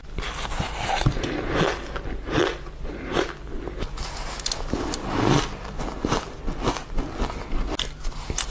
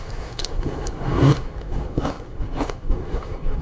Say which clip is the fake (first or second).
second